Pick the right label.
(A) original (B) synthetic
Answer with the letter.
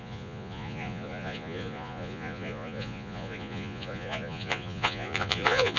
B